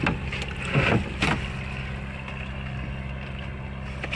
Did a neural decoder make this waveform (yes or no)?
no